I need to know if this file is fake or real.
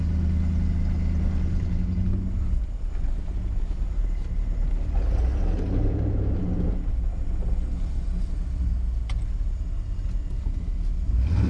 real